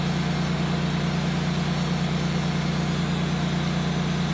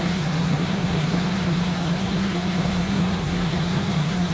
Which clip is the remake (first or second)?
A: second